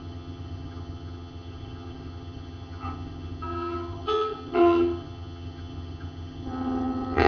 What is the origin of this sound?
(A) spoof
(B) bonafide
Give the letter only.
A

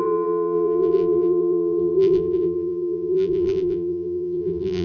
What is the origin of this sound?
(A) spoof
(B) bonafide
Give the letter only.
A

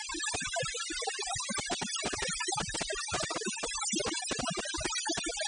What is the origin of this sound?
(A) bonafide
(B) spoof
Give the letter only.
A